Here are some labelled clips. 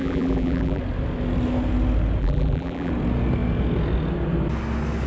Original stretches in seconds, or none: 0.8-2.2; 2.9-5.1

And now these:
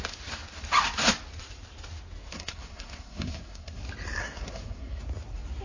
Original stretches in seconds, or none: 0.0-2.3; 3.8-4.2; 5.0-5.6

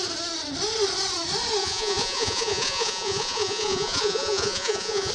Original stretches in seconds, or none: 0.0-1.6

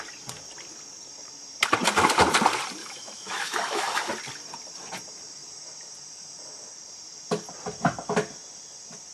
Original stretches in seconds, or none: 0.0-2.8; 4.1-9.1

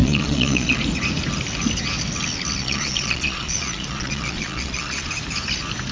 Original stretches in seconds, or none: 0.8-2.6; 5.1-5.9

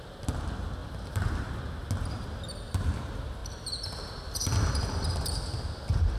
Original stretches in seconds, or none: 0.0-0.8; 1.5-6.2